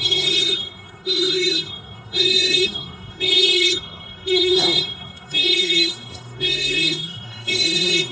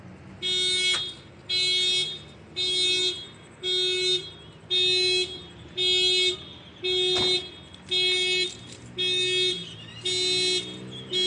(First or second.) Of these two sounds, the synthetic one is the first